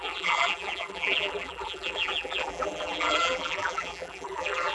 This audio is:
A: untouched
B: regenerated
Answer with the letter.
B